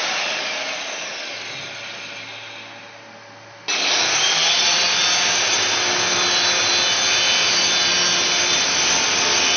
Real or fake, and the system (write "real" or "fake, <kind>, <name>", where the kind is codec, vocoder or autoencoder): real